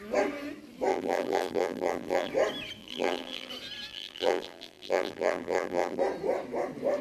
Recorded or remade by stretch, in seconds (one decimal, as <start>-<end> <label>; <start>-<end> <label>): 0.0-0.9 recorded; 0.9-2.3 remade; 2.3-2.8 recorded; 2.8-3.5 remade; 3.5-3.9 recorded; 3.9-6.0 remade; 6.0-7.0 recorded